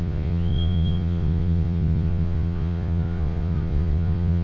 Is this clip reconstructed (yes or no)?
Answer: yes